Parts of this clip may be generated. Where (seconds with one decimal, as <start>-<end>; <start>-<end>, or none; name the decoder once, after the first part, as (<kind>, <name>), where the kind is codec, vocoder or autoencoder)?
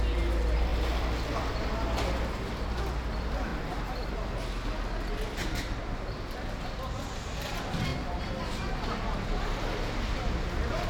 0.7-2.8 (vocoder, BigVGAN v2); 3.5-4.1; 5.4-6.4